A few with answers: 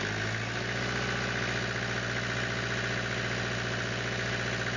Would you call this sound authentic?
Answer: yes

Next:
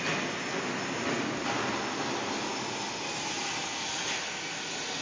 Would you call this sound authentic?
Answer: yes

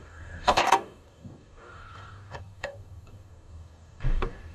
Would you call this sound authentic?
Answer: no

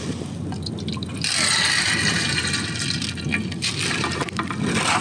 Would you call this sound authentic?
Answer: yes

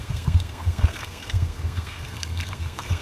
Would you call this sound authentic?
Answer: no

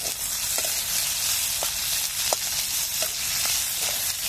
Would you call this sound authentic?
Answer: yes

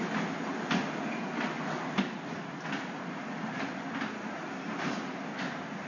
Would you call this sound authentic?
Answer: yes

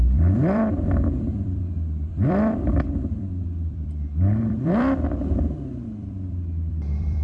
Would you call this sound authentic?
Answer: no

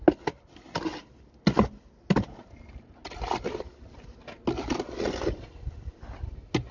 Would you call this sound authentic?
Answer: yes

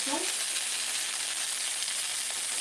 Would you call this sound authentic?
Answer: yes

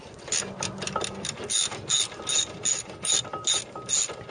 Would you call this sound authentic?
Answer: yes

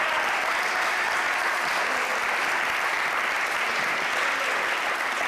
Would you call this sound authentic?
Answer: yes